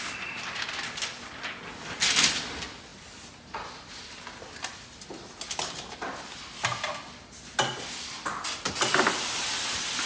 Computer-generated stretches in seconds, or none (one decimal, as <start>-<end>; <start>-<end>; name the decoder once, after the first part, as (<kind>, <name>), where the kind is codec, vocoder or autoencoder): none